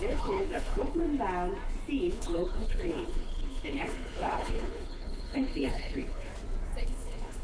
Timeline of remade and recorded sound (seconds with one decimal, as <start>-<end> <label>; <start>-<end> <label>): 0.0-1.0 remade; 1.0-2.0 recorded; 2.0-6.3 remade; 6.3-6.8 recorded; 6.8-7.4 remade